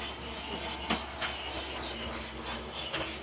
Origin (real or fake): real